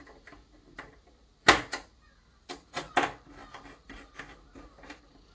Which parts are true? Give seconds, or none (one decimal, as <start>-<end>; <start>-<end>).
0.0-3.4; 4.2-5.3